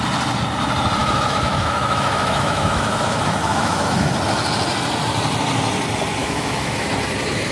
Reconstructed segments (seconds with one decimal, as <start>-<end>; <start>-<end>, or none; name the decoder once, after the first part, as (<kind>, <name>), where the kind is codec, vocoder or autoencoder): 1.0-4.1 (autoencoder, DAC-VAE); 6.2-6.9